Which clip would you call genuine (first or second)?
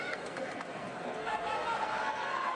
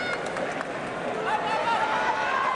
second